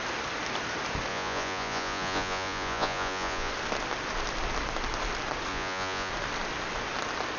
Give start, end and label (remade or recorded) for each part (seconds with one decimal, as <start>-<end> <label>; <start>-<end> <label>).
0.0-1.1 recorded; 1.1-3.5 remade; 3.5-5.5 recorded; 5.5-6.1 remade; 6.1-7.4 recorded